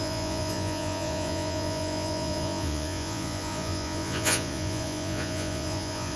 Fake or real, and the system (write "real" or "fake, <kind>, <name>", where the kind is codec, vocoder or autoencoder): fake, vocoder, Vocos